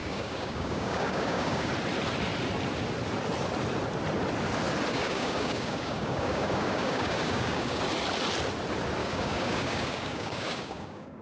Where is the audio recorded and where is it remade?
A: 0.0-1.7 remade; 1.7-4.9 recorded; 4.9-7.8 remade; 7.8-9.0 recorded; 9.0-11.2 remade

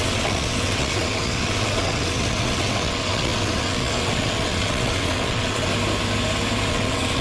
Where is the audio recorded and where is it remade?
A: 0.0-5.7 remade; 5.7-6.7 recorded; 6.7-7.2 remade

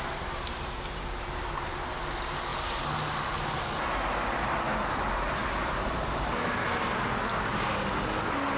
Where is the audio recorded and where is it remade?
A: 0.0-8.6 recorded

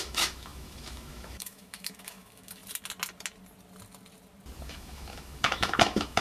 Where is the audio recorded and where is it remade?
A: 0.0-2.6 remade; 2.6-4.6 recorded; 4.6-6.2 remade

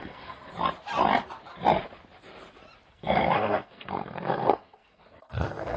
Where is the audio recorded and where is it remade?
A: 0.0-0.4 remade; 0.4-2.9 recorded; 2.9-5.8 remade